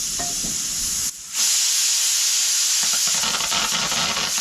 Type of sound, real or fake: real